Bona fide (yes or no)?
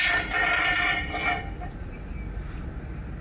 yes